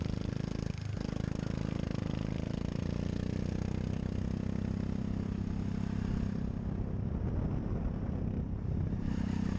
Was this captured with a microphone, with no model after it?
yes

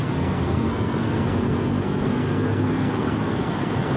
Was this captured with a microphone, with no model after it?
no